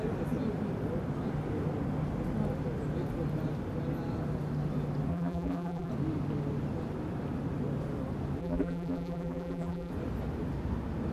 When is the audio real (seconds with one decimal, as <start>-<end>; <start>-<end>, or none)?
0.0-5.1; 5.9-8.4; 9.9-11.1